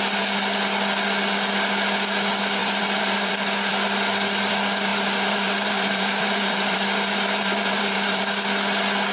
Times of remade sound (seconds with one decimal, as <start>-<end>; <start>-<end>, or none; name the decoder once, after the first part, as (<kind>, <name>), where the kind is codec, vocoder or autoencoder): 2.6-3.3 (vocoder, BigVGAN v2); 4.9-8.2